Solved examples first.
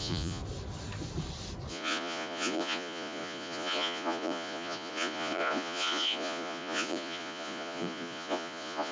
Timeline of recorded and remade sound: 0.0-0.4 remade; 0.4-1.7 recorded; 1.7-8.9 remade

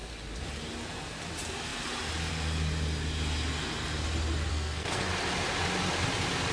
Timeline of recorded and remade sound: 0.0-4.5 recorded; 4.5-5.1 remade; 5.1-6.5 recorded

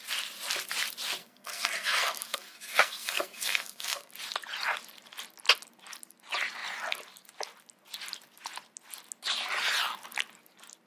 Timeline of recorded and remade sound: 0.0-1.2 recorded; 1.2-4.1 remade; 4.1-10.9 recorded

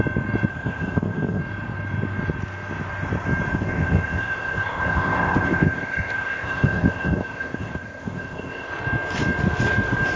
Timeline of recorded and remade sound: 0.0-0.5 recorded; 0.5-1.4 remade; 1.4-3.5 recorded; 3.5-8.7 remade; 8.7-10.2 recorded

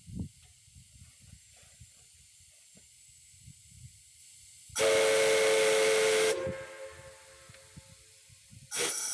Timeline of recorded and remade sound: 0.0-9.1 recorded

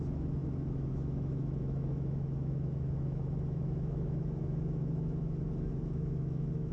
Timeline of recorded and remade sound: 0.0-6.7 remade

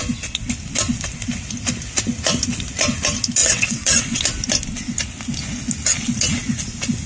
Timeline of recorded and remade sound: 0.0-3.4 recorded; 3.4-4.2 remade; 4.2-7.1 recorded

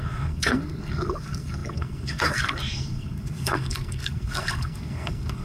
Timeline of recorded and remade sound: 0.0-5.4 remade